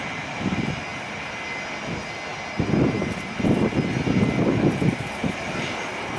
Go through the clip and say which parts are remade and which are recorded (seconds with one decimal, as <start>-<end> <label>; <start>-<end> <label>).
0.0-6.2 recorded